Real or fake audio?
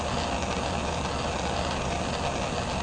real